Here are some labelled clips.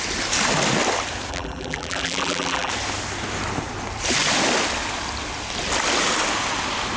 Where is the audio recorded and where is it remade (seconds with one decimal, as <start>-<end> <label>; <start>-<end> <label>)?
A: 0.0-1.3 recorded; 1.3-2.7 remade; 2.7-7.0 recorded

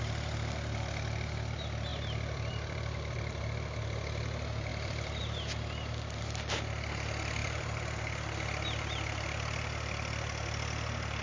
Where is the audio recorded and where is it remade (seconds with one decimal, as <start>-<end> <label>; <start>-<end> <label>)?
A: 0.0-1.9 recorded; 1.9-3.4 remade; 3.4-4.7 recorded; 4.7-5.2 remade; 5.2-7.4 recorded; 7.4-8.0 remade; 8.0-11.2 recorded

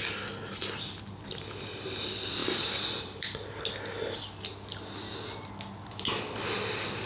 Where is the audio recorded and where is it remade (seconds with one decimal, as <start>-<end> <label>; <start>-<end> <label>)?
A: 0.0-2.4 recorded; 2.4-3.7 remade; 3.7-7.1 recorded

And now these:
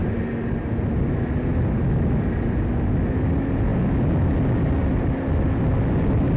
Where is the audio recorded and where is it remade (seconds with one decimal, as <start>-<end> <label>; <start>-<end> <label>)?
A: 0.0-6.4 recorded

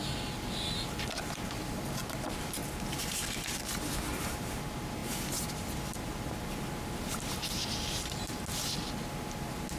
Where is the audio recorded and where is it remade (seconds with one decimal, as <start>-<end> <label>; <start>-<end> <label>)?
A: 0.0-4.1 recorded; 4.1-4.6 remade; 4.6-9.8 recorded